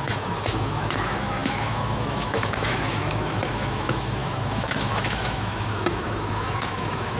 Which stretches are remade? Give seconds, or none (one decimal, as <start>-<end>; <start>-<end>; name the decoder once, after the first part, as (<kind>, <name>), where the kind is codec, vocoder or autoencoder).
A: 0.0-7.2 (autoencoder, DAC-VAE)